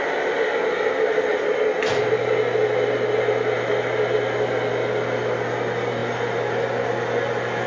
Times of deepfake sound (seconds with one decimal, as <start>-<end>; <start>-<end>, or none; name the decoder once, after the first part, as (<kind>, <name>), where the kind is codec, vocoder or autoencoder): none